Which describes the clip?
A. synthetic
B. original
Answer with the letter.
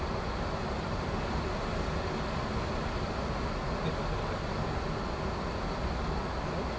B